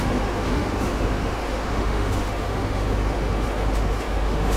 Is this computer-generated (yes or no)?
yes